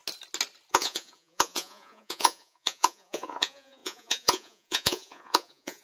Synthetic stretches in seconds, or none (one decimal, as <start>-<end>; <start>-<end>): 0.7-5.8

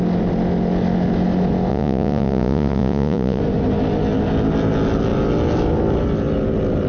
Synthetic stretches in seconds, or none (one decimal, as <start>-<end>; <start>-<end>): 1.7-3.4

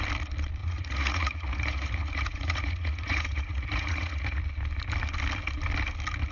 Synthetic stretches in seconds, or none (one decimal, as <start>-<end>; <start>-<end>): 0.6-4.4

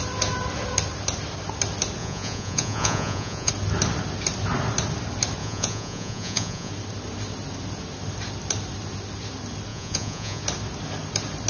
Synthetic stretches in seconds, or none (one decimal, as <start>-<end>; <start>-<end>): 2.0-3.5; 5.4-6.7; 9.7-10.4

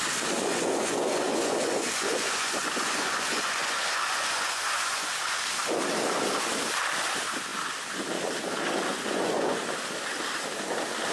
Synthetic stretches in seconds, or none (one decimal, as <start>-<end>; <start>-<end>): 0.5-5.1; 8.9-9.6

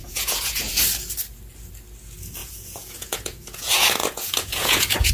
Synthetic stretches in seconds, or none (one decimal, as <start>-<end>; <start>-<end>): 0.0-0.8; 2.4-5.1

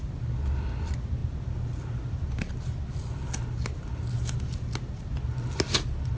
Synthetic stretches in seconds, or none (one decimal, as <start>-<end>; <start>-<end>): none

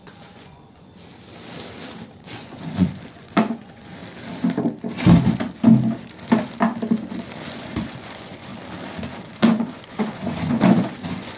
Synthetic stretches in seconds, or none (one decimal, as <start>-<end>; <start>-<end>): 0.0-0.9; 2.2-4.0; 7.5-8.5; 9.2-11.4